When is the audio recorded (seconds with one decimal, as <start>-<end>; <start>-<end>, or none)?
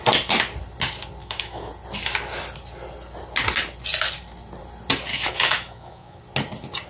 0.0-1.2; 1.7-5.1; 6.2-6.9